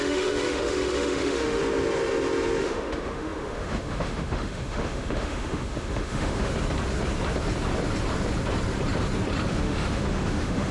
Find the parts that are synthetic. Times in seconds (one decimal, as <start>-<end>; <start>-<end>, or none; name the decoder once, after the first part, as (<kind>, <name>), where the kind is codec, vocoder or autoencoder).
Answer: 0.0-1.6 (autoencoder, DAC-VAE); 2.6-6.5; 9.5-10.7